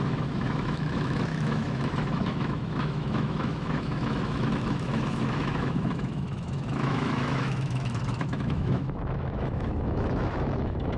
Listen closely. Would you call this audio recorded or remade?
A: remade